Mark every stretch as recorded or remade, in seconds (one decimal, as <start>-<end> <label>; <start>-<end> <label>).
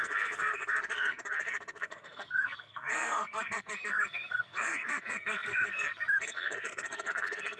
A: 0.0-7.6 remade